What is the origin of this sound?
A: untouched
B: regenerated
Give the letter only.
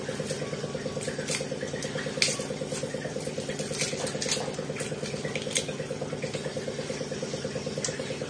A